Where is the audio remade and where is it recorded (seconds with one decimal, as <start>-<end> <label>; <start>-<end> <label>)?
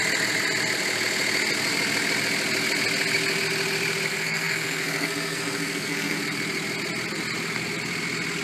0.0-4.1 recorded; 4.1-6.2 remade; 6.2-8.4 recorded